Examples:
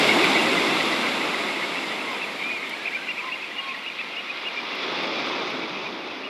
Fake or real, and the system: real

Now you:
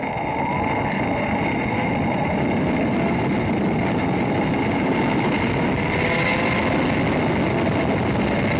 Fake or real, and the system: real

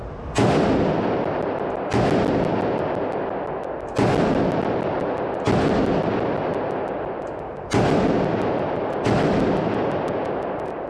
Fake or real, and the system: real